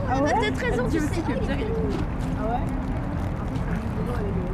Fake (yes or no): no